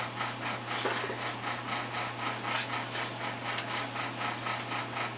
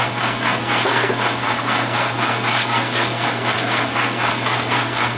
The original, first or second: first